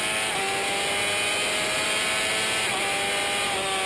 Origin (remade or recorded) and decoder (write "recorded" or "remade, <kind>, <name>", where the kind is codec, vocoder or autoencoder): recorded